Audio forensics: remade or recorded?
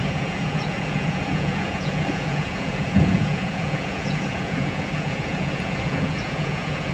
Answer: remade